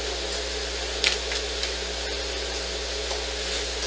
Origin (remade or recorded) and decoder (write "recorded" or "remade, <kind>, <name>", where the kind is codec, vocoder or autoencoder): recorded